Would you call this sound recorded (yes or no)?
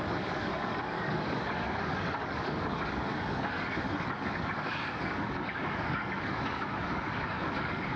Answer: no